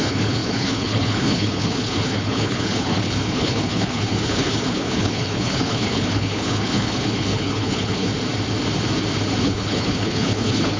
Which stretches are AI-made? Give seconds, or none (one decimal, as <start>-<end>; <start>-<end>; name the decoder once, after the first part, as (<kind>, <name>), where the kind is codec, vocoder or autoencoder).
0.0-8.1 (codec, HILCodec); 9.4-10.8